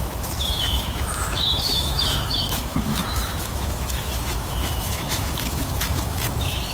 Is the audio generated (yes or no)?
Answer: yes